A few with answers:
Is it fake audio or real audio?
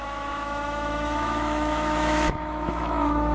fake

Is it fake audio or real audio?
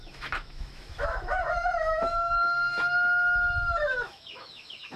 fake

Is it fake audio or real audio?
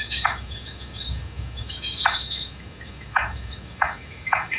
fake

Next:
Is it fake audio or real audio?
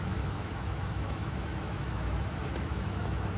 fake